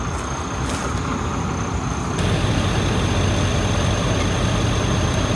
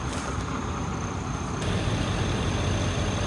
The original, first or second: first